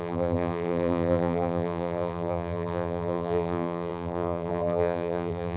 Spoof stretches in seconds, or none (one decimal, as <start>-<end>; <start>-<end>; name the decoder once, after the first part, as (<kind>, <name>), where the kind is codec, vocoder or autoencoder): 0.0-5.6 (vocoder, BigVGAN v2)